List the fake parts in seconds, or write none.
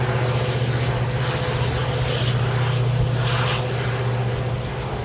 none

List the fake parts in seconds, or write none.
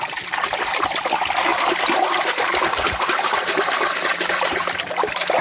1.5-4.7